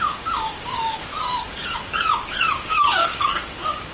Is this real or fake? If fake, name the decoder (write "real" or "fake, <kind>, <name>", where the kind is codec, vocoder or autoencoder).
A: fake, codec, DAC